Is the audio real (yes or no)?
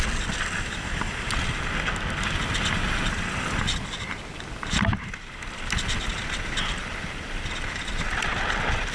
yes